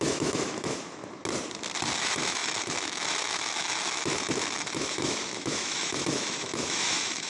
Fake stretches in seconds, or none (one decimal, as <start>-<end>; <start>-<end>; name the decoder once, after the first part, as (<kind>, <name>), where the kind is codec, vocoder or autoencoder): 0.0-1.0 (autoencoder, DAC-VAE); 2.0-7.3